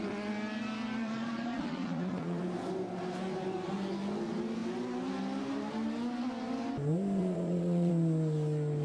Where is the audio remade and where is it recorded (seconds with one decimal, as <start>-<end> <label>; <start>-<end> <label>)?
0.0-1.0 recorded; 1.0-2.4 remade; 2.4-7.2 recorded; 7.2-7.9 remade; 7.9-8.8 recorded